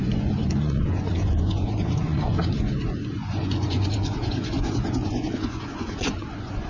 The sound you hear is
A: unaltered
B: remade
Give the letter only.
B